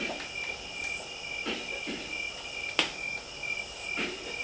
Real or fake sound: real